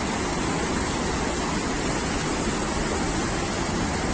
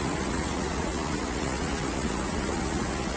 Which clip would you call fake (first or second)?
second